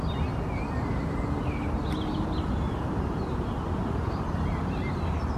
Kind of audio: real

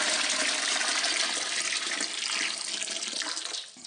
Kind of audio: real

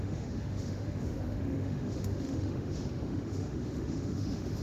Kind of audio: fake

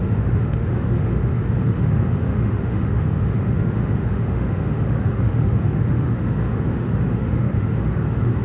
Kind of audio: fake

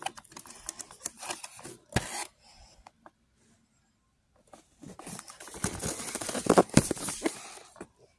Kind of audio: real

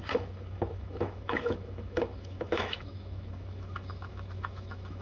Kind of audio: fake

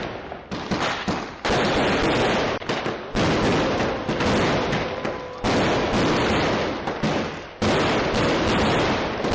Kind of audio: real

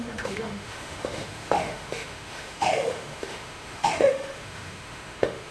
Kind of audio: fake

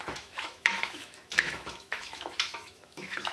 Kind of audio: fake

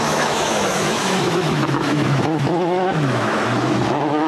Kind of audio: fake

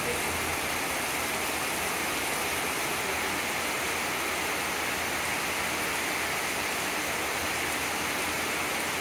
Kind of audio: real